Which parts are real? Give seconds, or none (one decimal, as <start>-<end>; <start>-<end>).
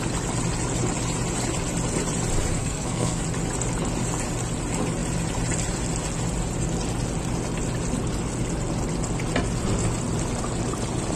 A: 0.0-2.6; 3.2-11.2